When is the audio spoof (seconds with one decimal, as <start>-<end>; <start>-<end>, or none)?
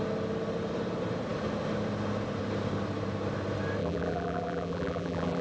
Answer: 3.8-5.4